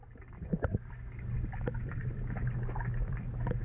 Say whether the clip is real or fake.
real